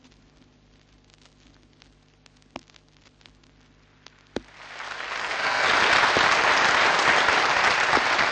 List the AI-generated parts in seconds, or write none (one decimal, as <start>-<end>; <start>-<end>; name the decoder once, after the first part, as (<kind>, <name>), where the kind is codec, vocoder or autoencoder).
5.2-5.7 (codec, SNAC)